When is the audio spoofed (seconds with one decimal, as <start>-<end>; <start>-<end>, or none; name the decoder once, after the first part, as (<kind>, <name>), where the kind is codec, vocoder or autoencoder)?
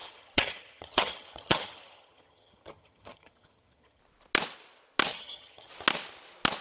0.0-4.0 (vocoder, HiFi-GAN); 5.1-5.7